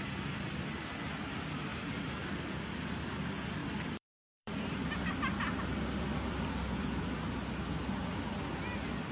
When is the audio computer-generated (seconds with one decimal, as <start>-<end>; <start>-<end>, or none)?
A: 3.6-7.0